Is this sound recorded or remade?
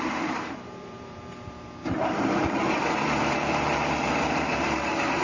remade